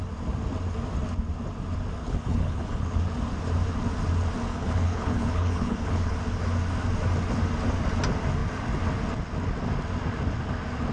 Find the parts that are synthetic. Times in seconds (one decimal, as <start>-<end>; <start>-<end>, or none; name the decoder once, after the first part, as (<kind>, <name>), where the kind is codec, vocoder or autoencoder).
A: 2.0-3.0 (codec, HILCodec); 4.5-6.2